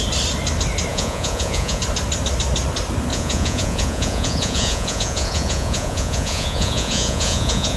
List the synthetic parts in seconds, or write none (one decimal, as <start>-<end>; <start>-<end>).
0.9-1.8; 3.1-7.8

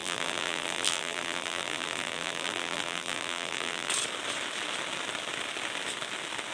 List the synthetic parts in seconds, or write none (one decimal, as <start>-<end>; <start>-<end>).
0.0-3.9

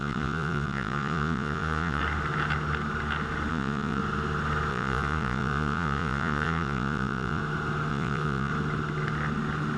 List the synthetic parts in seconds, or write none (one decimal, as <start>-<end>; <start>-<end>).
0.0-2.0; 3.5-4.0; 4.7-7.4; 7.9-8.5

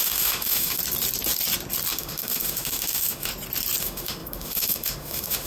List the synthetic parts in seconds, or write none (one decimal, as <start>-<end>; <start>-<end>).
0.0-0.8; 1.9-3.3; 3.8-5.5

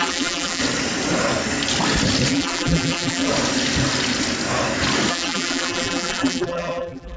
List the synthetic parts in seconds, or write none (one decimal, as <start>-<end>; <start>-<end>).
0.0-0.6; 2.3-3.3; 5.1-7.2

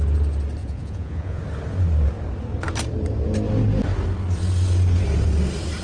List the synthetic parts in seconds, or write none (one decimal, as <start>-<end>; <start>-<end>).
0.6-1.4

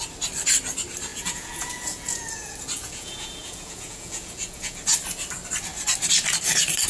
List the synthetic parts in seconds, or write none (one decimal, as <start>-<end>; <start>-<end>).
1.1-4.8